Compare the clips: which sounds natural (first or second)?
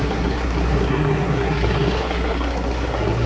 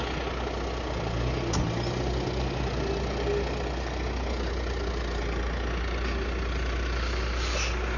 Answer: second